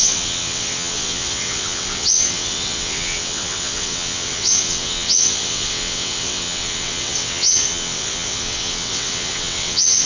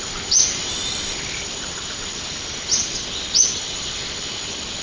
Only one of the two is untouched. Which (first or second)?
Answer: second